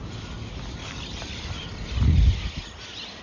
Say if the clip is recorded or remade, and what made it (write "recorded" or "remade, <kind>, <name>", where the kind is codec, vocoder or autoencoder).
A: recorded